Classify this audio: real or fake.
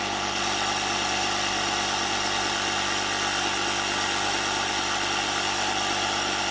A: real